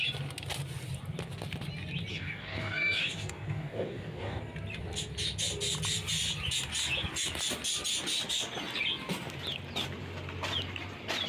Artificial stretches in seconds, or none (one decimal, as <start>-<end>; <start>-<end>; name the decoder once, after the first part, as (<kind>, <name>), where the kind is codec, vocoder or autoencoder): 2.1-4.4 (codec, DAC)